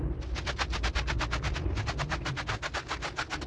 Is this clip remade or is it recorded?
recorded